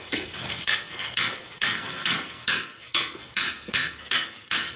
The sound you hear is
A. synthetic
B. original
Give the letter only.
A